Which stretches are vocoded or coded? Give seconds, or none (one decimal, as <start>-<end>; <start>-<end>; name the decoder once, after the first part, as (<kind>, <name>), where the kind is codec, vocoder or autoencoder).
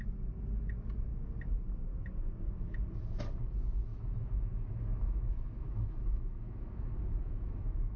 3.9-8.0 (autoencoder, DAC-VAE)